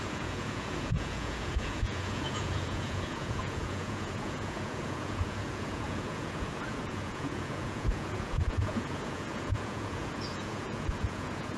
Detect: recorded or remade remade